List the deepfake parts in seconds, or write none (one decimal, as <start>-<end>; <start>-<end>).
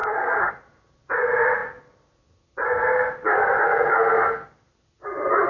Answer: 0.0-0.5